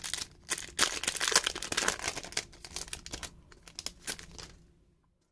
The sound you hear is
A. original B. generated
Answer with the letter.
A